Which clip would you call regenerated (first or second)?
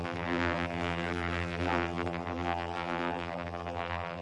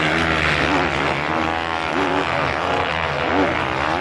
first